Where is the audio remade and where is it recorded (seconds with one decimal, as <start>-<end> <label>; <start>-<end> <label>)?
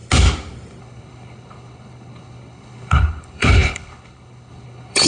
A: 0.0-0.8 recorded; 0.8-5.1 remade